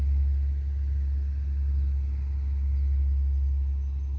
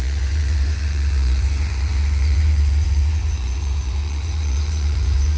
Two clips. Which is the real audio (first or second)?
first